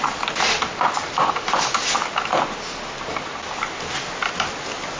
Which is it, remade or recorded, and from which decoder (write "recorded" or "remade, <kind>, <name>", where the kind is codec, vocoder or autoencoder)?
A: recorded